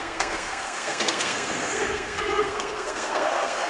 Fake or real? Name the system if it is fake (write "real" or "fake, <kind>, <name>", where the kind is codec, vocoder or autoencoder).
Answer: fake, codec, SNAC